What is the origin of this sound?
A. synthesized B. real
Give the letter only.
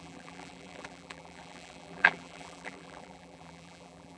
A